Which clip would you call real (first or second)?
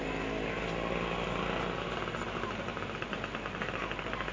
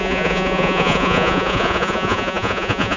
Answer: first